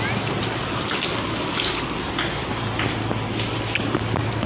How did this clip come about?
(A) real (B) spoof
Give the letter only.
A